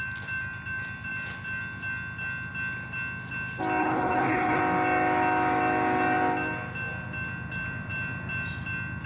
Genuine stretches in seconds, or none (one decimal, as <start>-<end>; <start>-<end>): 0.0-3.8; 4.6-9.1